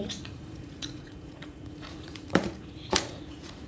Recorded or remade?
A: remade